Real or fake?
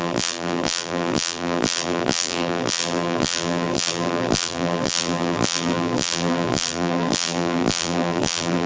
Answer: fake